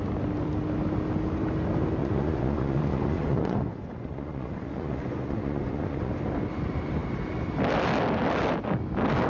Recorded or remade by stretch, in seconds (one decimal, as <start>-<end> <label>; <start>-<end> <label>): 0.0-2.0 recorded; 2.0-6.1 remade; 6.1-9.3 recorded

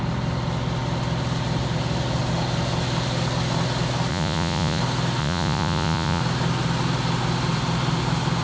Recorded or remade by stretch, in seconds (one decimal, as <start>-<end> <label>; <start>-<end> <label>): 0.0-4.1 recorded; 4.1-4.8 remade; 4.8-5.2 recorded; 5.2-6.2 remade; 6.2-8.4 recorded

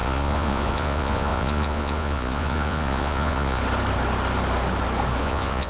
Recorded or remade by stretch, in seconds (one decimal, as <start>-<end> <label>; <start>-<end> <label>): 0.0-3.6 remade; 3.6-5.2 recorded; 5.2-5.7 remade